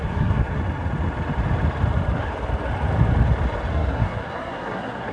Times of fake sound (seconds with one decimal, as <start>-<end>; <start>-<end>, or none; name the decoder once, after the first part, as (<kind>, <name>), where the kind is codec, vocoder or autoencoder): 0.0-0.6 (codec, SNAC); 3.7-5.1